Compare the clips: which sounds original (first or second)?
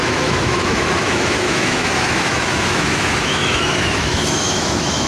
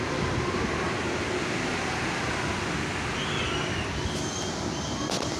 second